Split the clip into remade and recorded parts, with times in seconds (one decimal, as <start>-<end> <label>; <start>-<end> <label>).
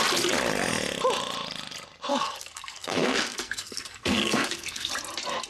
0.0-2.1 recorded; 2.1-4.9 remade; 4.9-5.5 recorded